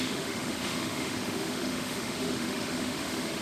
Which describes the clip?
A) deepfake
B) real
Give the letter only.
A